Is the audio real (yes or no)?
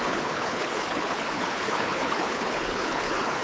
no